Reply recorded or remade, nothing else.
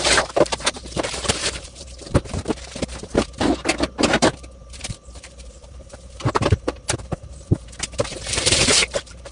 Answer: remade